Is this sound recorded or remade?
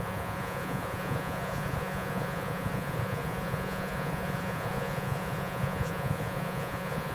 remade